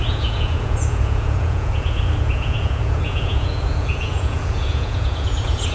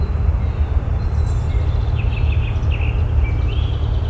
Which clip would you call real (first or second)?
second